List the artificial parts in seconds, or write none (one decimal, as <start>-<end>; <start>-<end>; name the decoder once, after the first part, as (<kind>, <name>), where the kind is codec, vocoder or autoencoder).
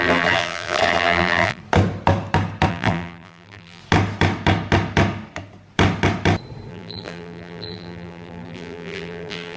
0.0-1.6 (vocoder, BigVGAN v2); 2.7-3.8; 6.7-9.6